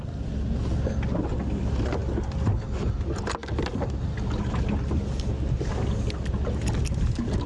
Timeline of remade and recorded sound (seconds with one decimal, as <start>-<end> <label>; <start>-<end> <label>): 0.0-7.5 recorded